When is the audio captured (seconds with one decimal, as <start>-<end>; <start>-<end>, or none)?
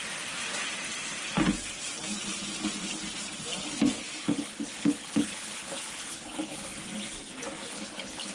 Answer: 0.0-4.2; 6.7-7.7